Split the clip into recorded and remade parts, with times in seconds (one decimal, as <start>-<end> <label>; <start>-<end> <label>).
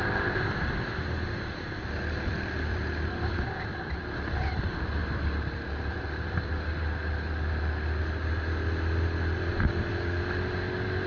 0.0-2.7 recorded; 2.7-4.0 remade; 4.0-5.0 recorded; 5.0-6.5 remade; 6.5-11.1 recorded